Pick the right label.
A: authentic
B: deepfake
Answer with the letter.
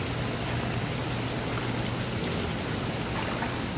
A